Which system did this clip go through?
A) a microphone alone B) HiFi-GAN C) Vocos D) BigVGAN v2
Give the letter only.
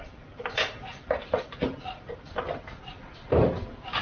A